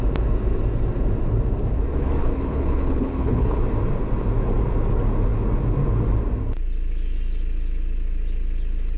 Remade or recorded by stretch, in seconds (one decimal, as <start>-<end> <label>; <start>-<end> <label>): 0.0-2.2 recorded; 2.2-3.6 remade; 3.6-9.0 recorded